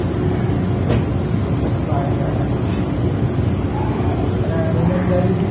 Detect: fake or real real